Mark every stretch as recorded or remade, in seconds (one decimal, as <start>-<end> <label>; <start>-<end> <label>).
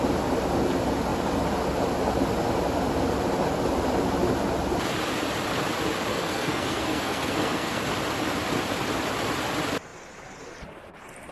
0.0-6.1 recorded; 6.1-7.8 remade; 7.8-11.3 recorded